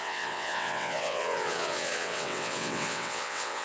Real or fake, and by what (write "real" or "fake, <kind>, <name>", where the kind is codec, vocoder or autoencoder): fake, vocoder, WaveNeXt